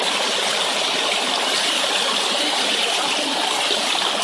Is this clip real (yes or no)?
yes